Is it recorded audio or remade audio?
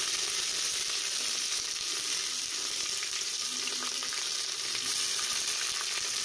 recorded